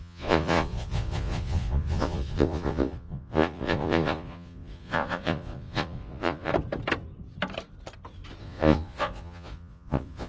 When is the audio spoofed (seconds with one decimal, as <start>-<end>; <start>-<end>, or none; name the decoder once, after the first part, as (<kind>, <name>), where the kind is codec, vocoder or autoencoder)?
0.0-6.5 (vocoder, Vocos); 8.4-10.3